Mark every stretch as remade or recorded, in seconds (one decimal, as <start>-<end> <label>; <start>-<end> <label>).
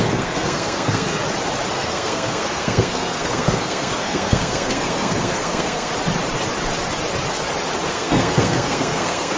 0.0-1.2 remade; 1.2-1.7 recorded; 1.7-5.9 remade; 5.9-7.9 recorded; 7.9-9.4 remade